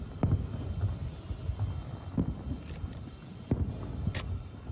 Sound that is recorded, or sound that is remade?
recorded